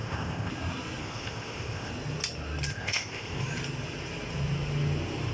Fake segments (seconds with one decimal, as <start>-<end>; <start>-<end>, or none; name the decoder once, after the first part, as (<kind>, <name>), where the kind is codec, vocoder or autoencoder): 0.0-0.5 (codec, ZipCodec); 1.0-1.9; 2.7-3.4